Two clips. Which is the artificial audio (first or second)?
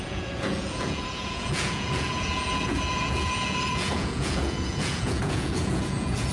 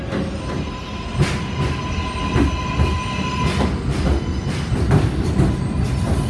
first